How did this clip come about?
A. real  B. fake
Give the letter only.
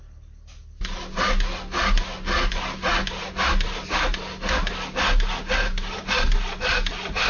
A